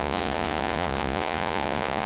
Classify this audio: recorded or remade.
remade